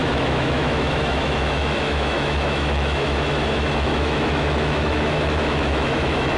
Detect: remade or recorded remade